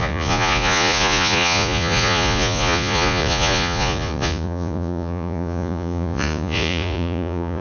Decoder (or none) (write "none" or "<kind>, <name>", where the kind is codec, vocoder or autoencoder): vocoder, Vocos